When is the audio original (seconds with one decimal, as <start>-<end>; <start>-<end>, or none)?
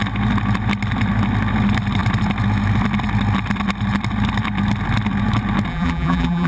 0.0-5.7